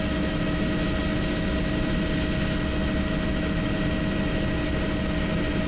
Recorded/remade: recorded